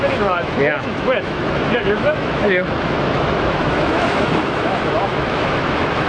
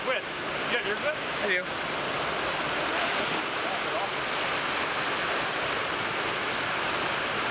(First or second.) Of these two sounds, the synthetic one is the first